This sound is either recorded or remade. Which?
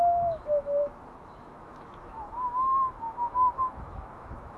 remade